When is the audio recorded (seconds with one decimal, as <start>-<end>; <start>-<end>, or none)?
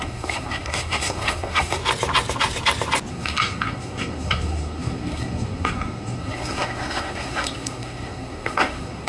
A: 1.8-3.1